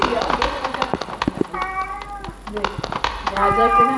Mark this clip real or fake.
fake